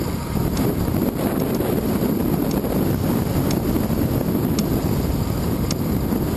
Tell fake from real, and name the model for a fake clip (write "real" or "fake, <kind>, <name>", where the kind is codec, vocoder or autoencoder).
real